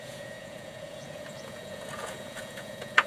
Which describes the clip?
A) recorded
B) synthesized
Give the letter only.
B